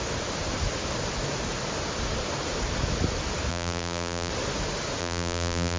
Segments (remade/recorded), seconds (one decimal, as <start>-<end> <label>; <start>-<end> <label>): 0.0-3.5 recorded; 3.5-4.3 remade; 4.3-5.0 recorded; 5.0-5.8 remade